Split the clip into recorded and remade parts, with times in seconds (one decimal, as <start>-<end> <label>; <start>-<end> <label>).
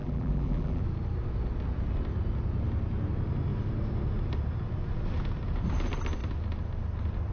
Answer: 0.0-0.8 remade; 0.8-7.3 recorded